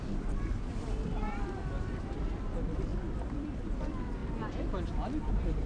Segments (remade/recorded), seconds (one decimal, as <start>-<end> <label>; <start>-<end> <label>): 0.0-4.2 remade; 4.2-5.3 recorded; 5.3-5.7 remade